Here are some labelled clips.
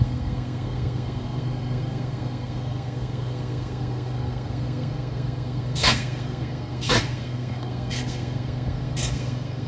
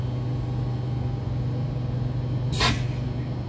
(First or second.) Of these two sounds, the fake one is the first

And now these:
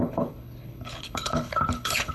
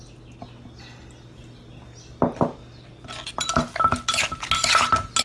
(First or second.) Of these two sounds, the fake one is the first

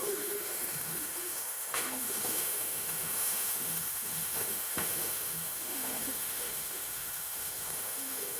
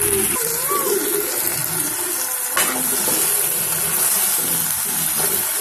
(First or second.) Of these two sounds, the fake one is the first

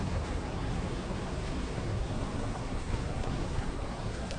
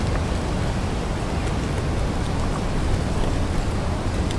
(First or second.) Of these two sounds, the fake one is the first